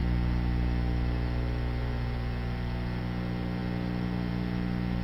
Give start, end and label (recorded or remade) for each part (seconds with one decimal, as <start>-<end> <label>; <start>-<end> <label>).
0.0-5.0 recorded